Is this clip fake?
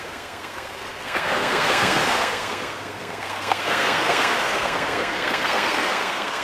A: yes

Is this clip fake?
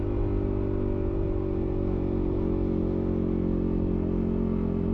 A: no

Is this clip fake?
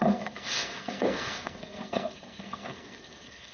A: yes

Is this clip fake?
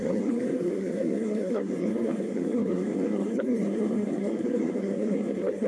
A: yes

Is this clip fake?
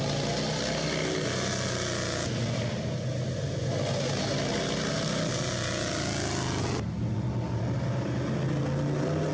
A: no